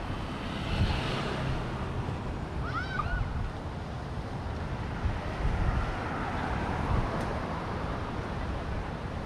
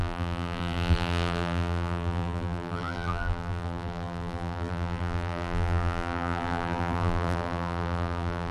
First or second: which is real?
first